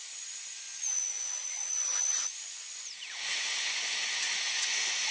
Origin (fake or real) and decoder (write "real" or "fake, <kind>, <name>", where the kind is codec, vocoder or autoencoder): fake, vocoder, Vocos